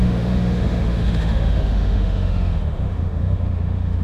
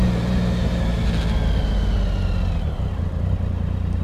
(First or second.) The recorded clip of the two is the second